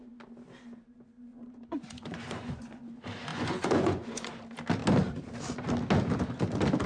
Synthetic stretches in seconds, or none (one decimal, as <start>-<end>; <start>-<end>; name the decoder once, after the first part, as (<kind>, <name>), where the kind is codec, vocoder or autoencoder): 1.3-2.8 (vocoder, Vocos); 3.3-4.3